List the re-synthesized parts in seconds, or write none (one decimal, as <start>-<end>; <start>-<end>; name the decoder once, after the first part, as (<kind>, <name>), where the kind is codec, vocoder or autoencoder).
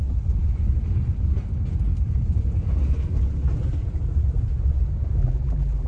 5.2-5.9 (vocoder, BigVGAN v2)